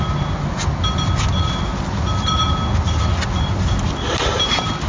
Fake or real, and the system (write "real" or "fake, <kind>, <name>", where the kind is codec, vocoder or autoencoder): real